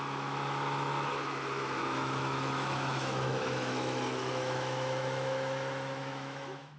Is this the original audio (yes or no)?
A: no